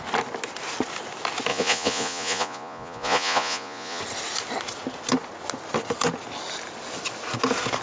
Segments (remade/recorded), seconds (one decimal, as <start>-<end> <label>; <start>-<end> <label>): 0.0-1.5 recorded; 1.5-4.0 remade; 4.0-7.8 recorded